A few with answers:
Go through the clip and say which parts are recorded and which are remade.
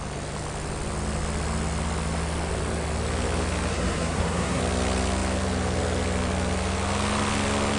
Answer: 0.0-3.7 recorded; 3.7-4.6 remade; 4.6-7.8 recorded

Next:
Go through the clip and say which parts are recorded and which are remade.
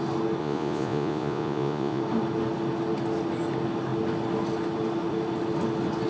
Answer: 0.0-0.4 recorded; 0.4-2.0 remade; 2.0-6.1 recorded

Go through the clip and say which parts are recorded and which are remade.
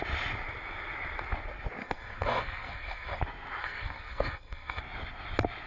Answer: 0.0-1.8 recorded; 1.8-3.2 remade; 3.2-3.6 recorded; 3.6-4.8 remade; 4.8-5.7 recorded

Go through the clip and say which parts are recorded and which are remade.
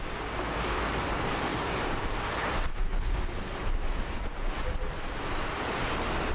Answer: 0.0-1.5 recorded; 1.5-3.0 remade; 3.0-3.6 recorded; 3.6-4.6 remade; 4.6-6.3 recorded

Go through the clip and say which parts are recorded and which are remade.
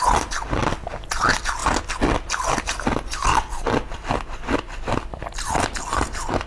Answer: 0.0-6.5 recorded